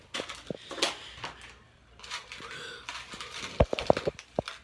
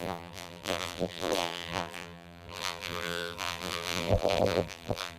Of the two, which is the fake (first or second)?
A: second